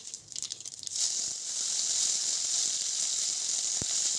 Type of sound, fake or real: real